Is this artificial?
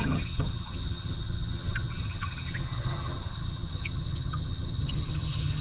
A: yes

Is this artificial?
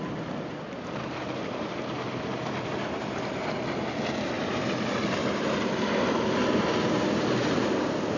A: no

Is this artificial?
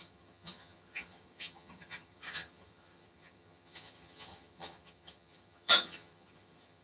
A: yes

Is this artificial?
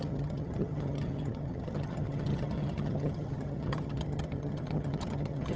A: yes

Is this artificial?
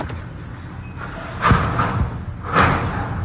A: no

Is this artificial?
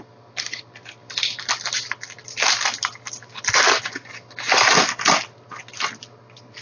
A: no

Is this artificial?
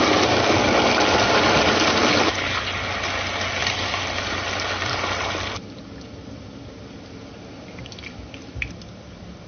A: no